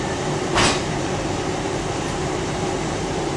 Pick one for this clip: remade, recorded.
remade